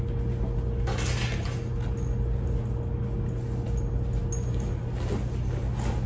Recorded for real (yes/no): yes